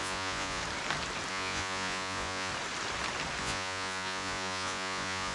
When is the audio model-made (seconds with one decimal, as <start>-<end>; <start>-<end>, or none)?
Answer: 0.0-0.6; 1.3-2.5; 3.4-5.3

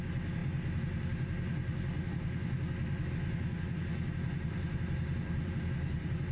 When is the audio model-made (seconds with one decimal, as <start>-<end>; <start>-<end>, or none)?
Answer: none